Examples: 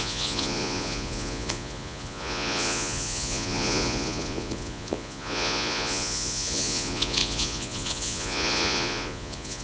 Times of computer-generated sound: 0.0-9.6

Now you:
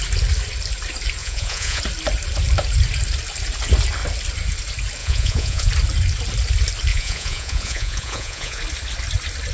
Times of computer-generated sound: 1.2-1.8; 5.0-5.7; 6.9-8.6

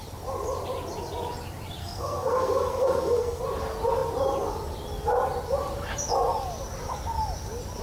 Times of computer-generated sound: 1.8-3.4

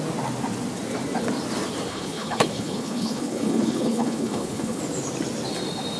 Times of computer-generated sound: 1.9-4.8

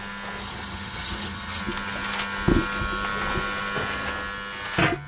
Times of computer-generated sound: 0.4-1.6

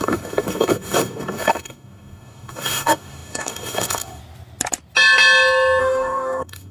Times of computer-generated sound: 0.0-4.2; 5.8-6.7